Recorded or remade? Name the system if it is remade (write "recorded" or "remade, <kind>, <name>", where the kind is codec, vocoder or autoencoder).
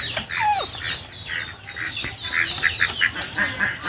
recorded